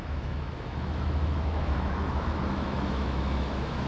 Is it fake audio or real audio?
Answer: fake